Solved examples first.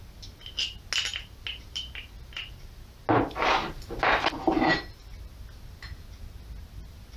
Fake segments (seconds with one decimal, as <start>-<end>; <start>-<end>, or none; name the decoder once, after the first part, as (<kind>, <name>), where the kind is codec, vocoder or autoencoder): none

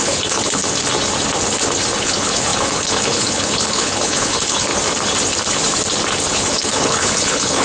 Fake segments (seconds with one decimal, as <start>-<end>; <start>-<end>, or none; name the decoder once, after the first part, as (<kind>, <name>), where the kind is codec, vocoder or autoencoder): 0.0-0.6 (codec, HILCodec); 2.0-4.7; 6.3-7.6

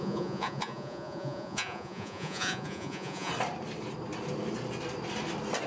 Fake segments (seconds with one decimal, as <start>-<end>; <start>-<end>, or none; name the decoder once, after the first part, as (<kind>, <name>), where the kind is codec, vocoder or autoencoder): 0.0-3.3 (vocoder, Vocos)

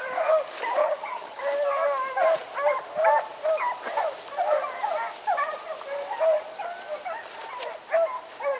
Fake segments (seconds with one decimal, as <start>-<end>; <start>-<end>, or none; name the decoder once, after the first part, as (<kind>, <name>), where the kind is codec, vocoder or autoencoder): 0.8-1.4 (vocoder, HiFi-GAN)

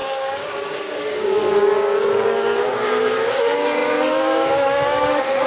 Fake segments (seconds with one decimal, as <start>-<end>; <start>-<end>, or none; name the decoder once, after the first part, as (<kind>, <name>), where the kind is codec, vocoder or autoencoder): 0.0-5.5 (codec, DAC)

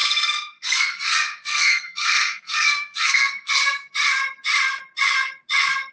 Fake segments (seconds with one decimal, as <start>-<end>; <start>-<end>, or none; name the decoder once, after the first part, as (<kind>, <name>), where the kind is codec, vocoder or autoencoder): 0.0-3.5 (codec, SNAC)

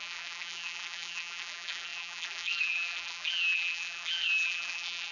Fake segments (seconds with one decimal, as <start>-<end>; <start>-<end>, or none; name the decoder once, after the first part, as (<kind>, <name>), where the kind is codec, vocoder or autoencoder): 0.0-5.1 (vocoder, BigVGAN v2)